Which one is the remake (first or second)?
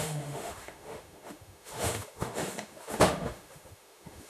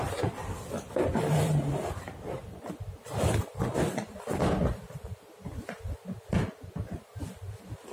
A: first